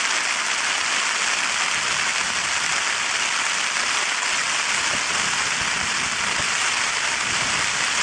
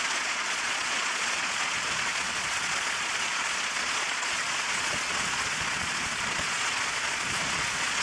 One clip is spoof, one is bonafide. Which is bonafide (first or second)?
first